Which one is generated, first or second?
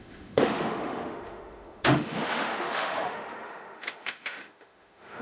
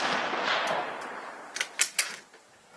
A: first